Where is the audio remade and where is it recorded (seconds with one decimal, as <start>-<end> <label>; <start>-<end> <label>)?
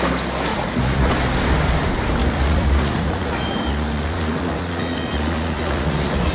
0.0-0.5 recorded; 0.5-1.1 remade; 1.1-2.2 recorded; 2.2-6.3 remade